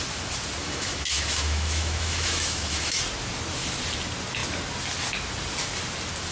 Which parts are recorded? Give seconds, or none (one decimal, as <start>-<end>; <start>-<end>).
0.0-0.6; 3.0-6.3